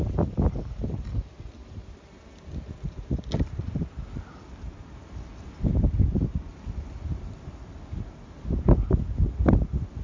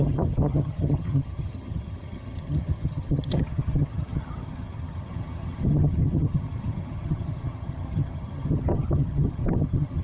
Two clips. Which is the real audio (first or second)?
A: first